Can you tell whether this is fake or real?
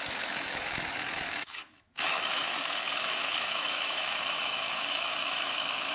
fake